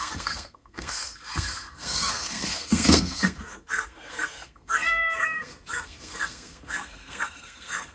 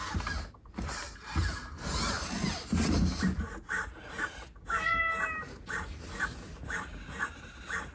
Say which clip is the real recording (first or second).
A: second